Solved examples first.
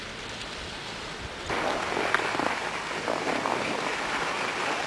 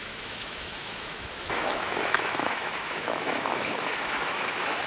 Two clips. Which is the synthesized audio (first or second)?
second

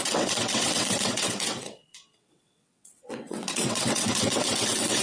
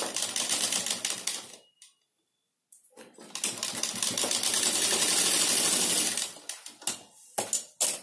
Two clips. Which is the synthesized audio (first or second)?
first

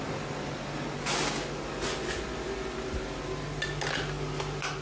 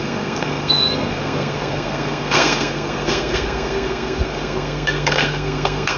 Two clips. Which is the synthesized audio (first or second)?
second